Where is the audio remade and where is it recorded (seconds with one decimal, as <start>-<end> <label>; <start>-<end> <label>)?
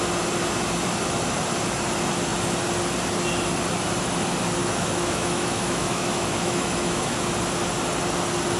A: 0.0-4.6 recorded; 4.6-7.3 remade; 7.3-8.6 recorded